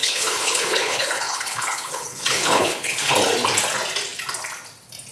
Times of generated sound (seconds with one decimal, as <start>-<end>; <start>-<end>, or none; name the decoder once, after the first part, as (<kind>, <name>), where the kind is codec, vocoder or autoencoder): 0.0-3.1 (codec, HILCodec)